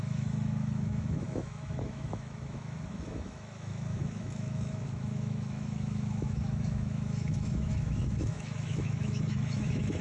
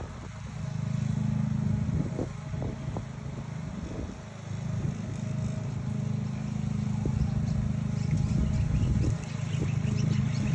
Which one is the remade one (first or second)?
first